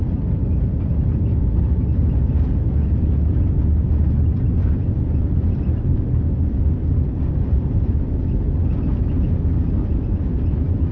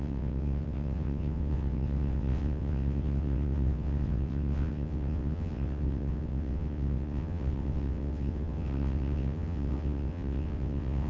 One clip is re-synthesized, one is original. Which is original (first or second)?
first